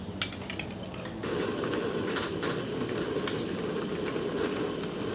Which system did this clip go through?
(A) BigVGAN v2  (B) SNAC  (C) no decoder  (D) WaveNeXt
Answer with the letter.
C